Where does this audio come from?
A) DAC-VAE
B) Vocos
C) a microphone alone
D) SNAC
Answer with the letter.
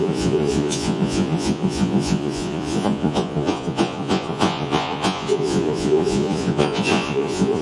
B